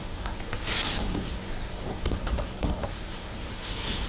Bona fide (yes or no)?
no